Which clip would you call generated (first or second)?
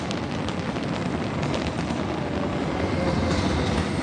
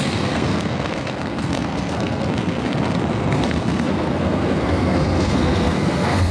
second